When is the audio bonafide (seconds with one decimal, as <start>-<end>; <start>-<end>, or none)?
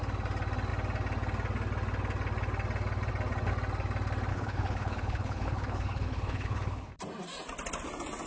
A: 0.0-4.3; 6.9-8.3